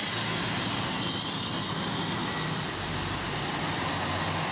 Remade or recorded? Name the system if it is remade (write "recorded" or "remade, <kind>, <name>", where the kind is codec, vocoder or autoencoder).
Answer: recorded